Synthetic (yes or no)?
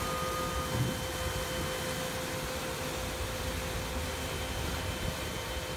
no